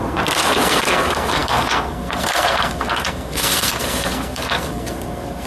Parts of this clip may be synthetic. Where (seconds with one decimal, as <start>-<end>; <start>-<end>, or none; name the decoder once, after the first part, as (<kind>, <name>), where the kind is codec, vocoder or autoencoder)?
0.0-5.5 (codec, SNAC)